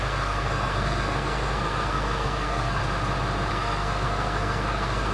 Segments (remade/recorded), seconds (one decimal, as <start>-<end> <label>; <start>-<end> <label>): 0.0-2.8 remade; 2.8-3.5 recorded; 3.5-5.1 remade